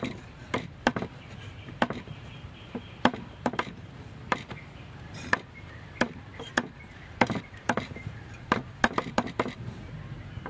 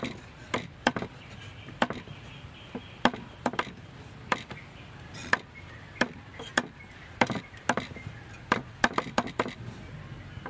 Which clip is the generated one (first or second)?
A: first